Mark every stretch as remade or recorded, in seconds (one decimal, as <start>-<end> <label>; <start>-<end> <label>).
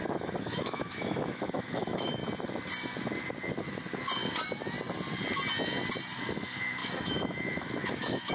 0.0-2.2 remade; 2.2-6.2 recorded; 6.2-8.3 remade